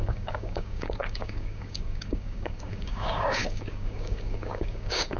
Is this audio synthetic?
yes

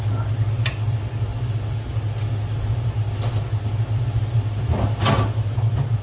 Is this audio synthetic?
no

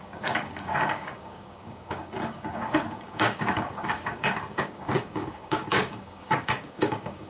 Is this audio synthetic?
yes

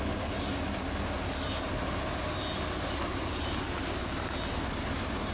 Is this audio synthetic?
no